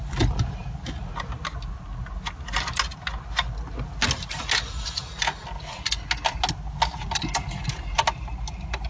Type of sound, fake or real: real